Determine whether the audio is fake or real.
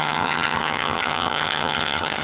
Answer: fake